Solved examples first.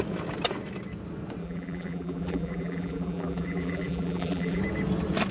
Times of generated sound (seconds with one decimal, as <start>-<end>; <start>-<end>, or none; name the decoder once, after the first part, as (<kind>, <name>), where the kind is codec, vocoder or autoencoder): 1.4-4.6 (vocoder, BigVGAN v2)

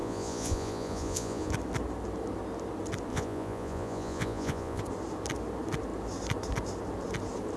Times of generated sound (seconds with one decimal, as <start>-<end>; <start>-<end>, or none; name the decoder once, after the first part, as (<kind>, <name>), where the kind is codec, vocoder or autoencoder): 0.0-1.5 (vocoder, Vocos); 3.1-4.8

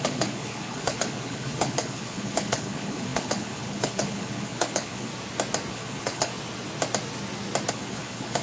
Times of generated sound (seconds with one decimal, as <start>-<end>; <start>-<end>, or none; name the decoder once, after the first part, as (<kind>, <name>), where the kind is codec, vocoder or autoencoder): 0.0-5.1 (codec, HILCodec); 5.7-6.3; 7.7-8.4